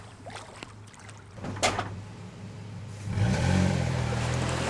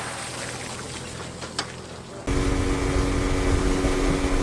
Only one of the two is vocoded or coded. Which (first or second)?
first